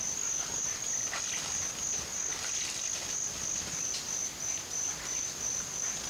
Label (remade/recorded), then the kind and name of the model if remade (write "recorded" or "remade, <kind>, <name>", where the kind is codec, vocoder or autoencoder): recorded